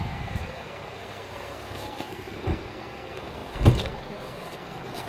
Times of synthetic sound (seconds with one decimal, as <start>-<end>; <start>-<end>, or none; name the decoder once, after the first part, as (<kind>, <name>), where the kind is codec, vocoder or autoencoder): 0.0-5.1 (codec, SNAC)